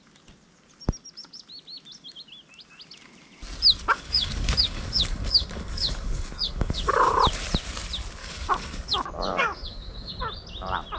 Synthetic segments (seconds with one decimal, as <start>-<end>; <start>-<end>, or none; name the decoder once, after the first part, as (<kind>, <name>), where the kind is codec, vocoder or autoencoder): 3.9-7.2 (codec, DAC); 8.2-10.2